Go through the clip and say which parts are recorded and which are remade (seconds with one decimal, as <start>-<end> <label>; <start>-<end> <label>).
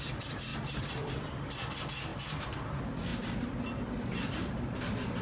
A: 0.0-0.5 recorded; 0.5-1.1 remade; 1.1-5.2 recorded